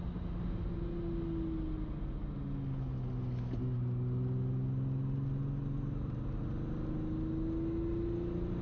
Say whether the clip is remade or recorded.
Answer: recorded